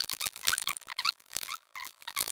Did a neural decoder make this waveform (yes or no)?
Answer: yes